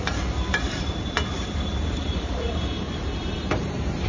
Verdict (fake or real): fake